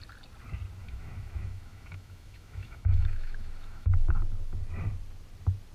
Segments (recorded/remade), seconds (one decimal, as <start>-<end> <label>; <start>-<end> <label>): 0.0-0.8 recorded; 0.8-4.2 remade; 4.2-5.7 recorded